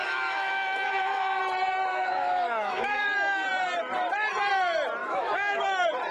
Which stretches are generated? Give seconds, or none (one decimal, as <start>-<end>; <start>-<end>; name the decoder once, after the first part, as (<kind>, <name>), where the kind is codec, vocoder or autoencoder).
0.0-1.4 (autoencoder, DAC-VAE); 1.9-3.0; 5.0-5.6